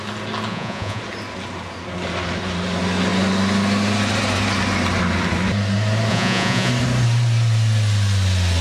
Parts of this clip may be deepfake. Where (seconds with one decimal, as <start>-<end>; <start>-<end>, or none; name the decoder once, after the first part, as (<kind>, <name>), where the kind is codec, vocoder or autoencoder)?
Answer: 0.5-1.0 (vocoder, Vocos); 6.1-6.7